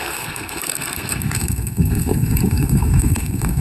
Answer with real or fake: fake